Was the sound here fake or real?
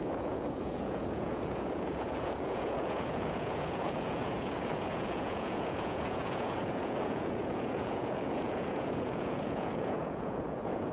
fake